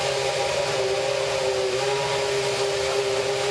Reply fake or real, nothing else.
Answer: real